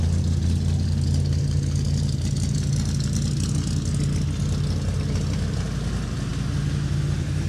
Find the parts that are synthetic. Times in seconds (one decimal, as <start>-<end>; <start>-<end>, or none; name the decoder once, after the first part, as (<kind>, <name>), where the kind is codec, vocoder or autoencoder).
none